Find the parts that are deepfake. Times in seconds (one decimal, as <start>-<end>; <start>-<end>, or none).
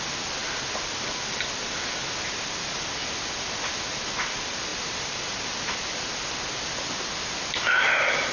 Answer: none